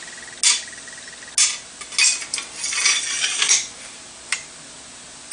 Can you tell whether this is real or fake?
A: real